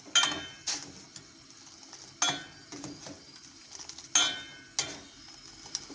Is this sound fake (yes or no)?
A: no